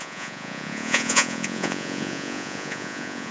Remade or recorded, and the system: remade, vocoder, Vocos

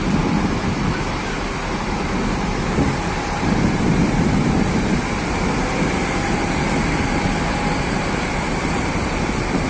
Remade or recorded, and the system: remade, vocoder, BigVGAN v2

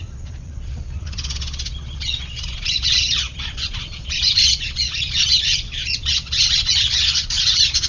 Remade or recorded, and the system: remade, vocoder, Vocos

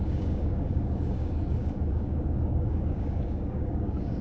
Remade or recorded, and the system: remade, codec, DAC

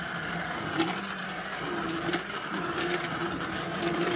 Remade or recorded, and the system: remade, vocoder, BigVGAN v2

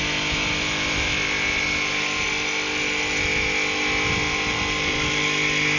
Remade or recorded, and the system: recorded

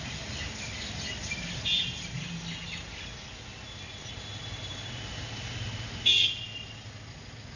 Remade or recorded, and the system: recorded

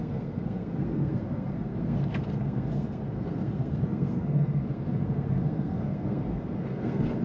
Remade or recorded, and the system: remade, codec, SNAC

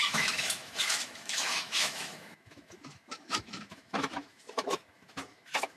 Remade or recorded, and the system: remade, autoencoder, DAC-VAE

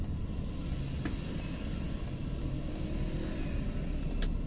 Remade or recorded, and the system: recorded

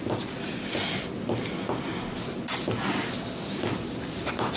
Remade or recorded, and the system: recorded